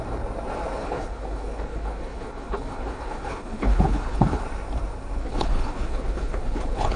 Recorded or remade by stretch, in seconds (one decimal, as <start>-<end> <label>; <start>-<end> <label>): 0.0-0.8 recorded; 0.8-4.4 remade; 4.4-5.2 recorded; 5.2-7.0 remade